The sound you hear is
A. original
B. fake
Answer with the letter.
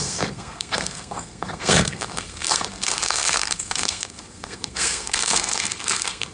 B